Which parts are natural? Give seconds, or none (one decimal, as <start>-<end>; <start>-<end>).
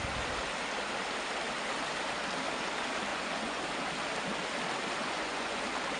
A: 0.0-3.1; 3.6-5.0; 5.6-6.0